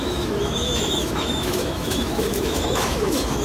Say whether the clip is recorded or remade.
remade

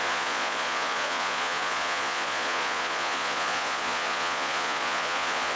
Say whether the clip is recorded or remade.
remade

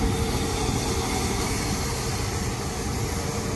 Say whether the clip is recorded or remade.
recorded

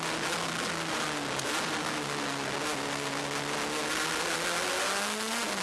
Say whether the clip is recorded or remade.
recorded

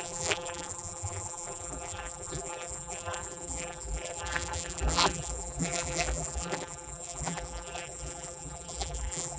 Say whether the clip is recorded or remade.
remade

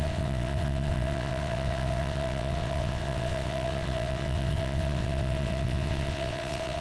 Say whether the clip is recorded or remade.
remade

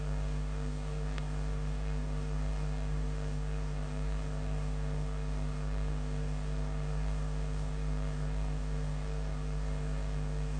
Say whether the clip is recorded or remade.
remade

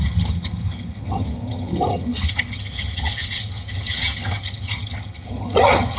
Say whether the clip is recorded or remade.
remade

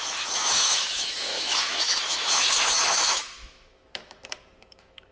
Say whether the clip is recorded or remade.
remade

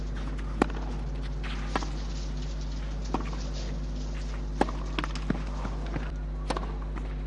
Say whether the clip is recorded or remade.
recorded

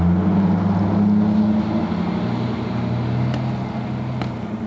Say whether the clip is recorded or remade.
recorded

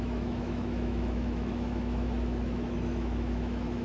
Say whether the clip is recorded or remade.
remade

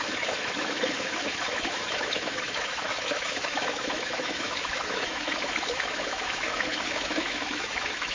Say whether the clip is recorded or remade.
remade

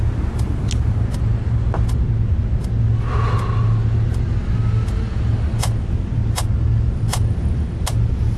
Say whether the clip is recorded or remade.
recorded